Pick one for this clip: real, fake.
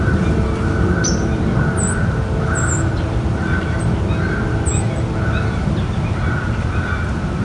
real